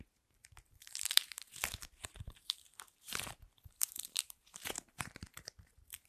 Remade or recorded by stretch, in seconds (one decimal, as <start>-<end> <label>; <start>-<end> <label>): 0.0-6.1 remade